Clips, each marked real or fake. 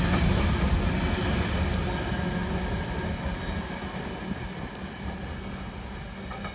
real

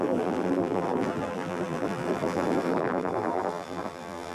fake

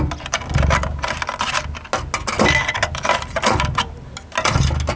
real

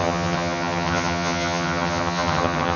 fake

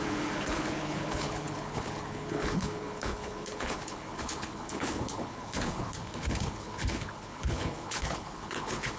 fake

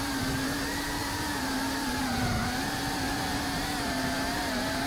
fake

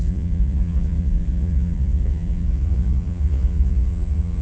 fake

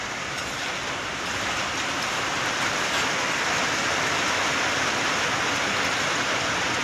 real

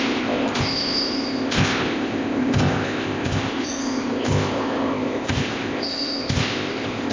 fake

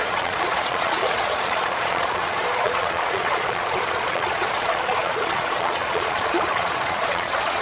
fake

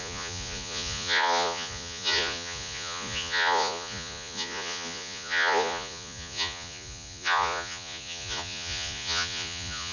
fake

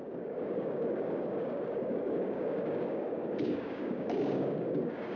fake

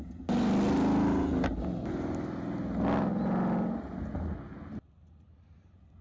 real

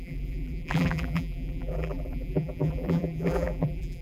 fake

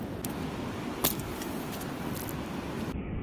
real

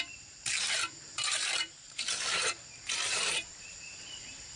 fake